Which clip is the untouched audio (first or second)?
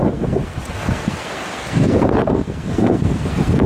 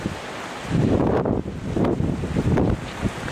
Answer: second